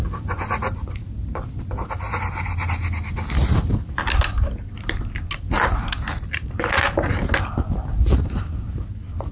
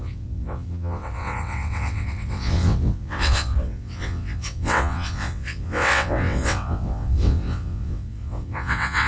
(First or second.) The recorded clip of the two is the first